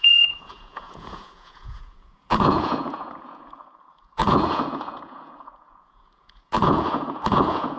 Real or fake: fake